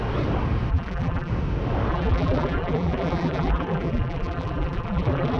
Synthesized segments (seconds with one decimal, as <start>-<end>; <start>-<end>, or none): 0.7-1.3; 1.9-5.4